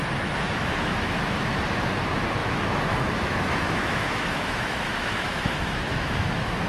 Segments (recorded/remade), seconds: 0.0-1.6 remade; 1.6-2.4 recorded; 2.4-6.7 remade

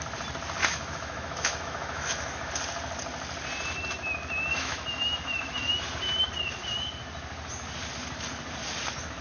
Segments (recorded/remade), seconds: 0.0-0.6 recorded; 0.6-2.5 remade; 2.5-4.5 recorded; 4.5-5.8 remade; 5.8-9.2 recorded

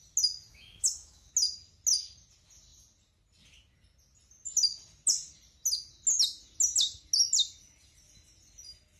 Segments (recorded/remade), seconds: 0.0-0.5 recorded; 0.5-1.3 remade; 1.3-9.0 recorded